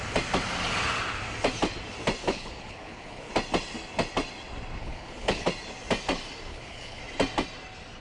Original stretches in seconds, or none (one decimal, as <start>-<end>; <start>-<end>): 0.0-2.2; 3.3-4.8; 5.5-6.5; 7.0-8.0